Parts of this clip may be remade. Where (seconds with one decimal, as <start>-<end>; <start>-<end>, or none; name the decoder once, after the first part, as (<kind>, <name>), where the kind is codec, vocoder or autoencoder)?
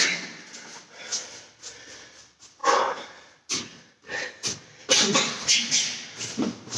none